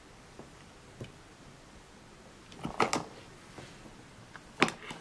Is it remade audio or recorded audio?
recorded